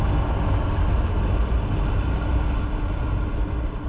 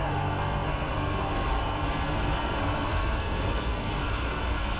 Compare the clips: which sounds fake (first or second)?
second